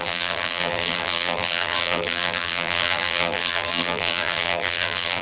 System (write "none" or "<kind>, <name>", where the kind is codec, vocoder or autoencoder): vocoder, BigVGAN v2